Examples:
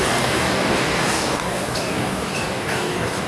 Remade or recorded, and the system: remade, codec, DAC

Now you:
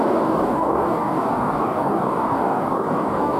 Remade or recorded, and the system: remade, codec, DAC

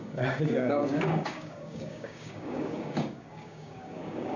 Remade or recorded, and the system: remade, codec, DAC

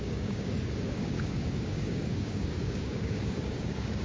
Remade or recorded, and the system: remade, codec, DAC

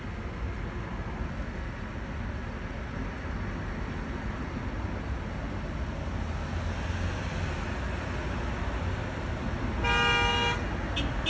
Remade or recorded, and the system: recorded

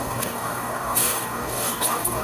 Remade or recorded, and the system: remade, codec, DAC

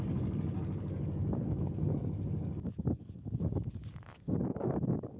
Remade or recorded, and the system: remade, codec, DAC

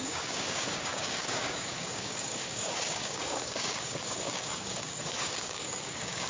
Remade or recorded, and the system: remade, codec, DAC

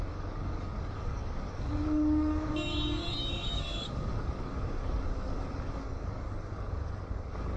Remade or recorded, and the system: remade, codec, DAC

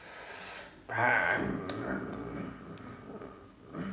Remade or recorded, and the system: recorded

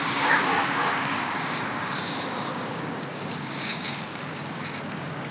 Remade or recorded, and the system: remade, codec, DAC